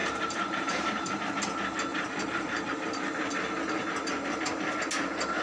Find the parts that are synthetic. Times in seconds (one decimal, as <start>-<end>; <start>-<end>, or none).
0.0-1.2; 1.9-2.7